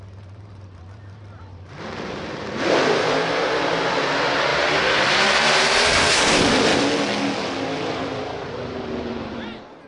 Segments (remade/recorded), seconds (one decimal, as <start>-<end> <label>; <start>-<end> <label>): 0.0-6.7 remade; 6.7-7.9 recorded; 7.9-9.9 remade